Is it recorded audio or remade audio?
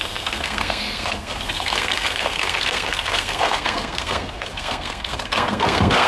remade